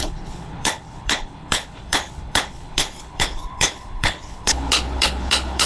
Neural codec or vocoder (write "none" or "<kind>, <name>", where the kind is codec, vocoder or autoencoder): codec, HILCodec